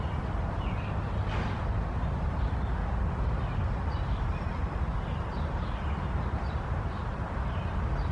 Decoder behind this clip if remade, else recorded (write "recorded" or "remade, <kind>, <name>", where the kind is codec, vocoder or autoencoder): recorded